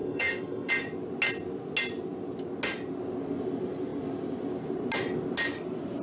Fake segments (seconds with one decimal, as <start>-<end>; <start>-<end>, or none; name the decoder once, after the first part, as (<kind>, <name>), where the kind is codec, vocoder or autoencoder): 0.0-0.7 (codec, SNAC)